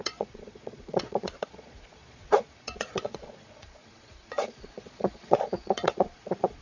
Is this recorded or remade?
remade